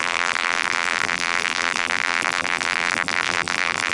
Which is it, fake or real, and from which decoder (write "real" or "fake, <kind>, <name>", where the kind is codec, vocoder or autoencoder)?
fake, vocoder, BigVGAN v2